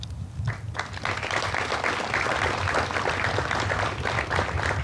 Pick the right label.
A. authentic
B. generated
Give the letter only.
A